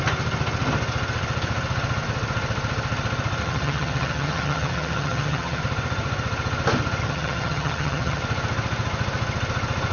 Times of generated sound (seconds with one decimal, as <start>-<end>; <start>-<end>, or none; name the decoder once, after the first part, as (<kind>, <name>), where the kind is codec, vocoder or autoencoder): 3.4-5.6 (vocoder, HiFi-GAN); 7.0-8.2